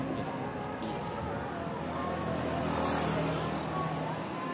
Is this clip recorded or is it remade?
recorded